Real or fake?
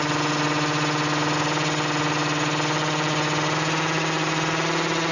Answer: real